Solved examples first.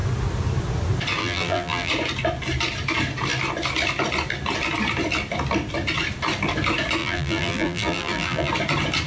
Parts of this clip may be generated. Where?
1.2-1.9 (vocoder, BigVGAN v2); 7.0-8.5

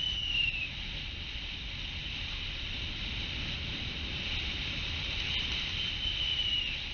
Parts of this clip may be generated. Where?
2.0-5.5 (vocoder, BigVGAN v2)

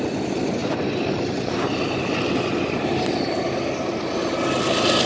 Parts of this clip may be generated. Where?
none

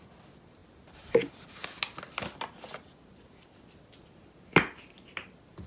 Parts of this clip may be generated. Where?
none